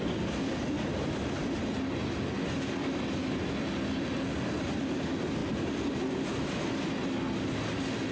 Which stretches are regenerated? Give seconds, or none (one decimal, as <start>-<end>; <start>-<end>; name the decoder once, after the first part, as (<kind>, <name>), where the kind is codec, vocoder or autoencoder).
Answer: 0.5-1.6 (vocoder, BigVGAN v2); 5.4-6.2